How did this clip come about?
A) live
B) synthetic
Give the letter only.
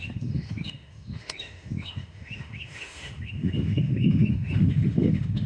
B